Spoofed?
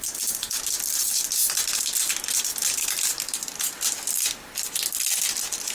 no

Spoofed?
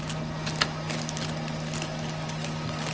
no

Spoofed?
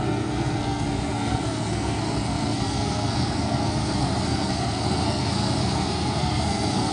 yes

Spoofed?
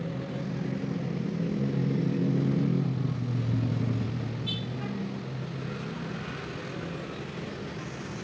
no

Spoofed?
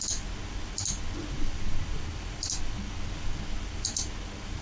no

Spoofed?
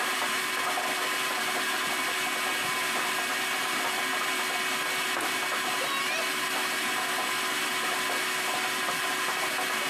no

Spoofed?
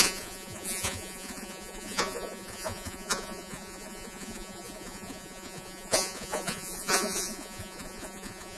yes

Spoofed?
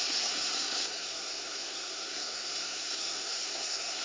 yes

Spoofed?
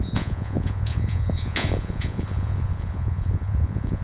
yes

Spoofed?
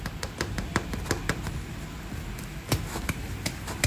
no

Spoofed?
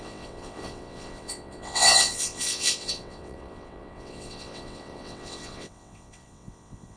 yes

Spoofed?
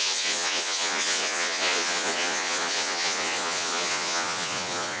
yes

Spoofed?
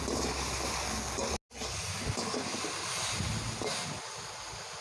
no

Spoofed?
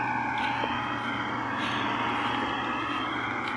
no